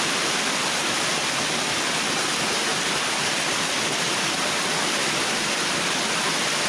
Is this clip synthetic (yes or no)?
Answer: no